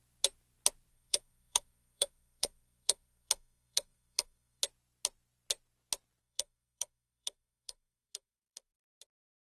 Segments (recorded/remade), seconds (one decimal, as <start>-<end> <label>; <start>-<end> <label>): 0.0-0.9 recorded; 0.9-4.6 remade; 4.6-6.2 recorded; 6.2-9.0 remade; 9.0-9.4 recorded